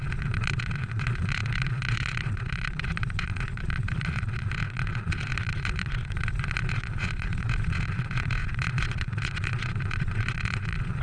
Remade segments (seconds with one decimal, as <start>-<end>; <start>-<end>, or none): 0.0-11.0